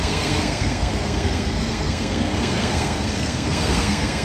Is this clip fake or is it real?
fake